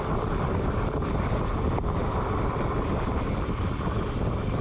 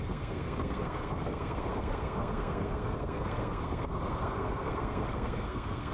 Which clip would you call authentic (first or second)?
first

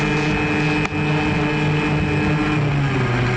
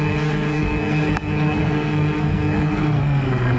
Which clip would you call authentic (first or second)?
first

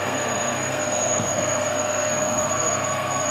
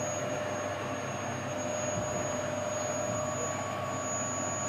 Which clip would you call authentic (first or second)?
second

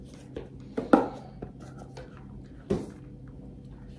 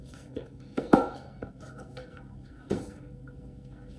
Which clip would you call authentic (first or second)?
first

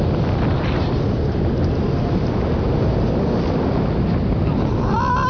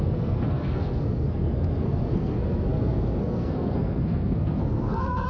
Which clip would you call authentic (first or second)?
first